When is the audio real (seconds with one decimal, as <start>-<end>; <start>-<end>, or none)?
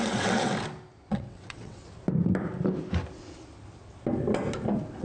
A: 0.5-1.1; 1.8-5.0